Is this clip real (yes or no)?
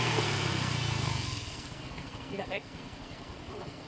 no